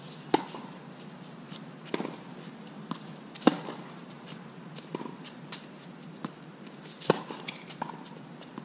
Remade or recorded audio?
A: recorded